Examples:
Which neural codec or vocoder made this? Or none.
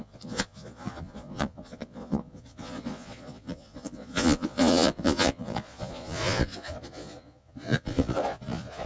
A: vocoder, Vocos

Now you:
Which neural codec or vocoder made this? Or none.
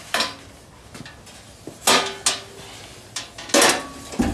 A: none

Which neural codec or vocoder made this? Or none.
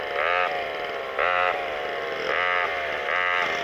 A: none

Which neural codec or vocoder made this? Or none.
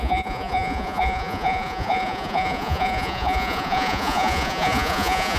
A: vocoder, Vocos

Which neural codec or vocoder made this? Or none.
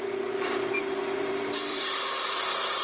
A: vocoder, BigVGAN v2